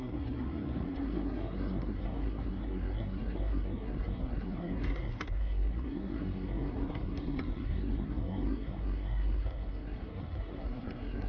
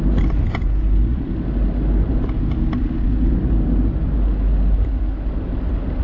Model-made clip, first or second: first